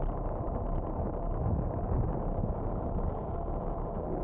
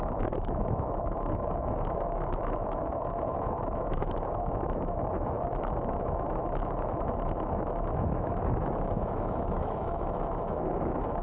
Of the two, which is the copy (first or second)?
second